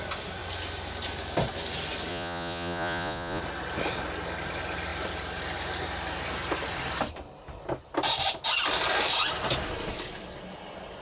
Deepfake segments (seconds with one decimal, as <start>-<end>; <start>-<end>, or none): 2.1-3.4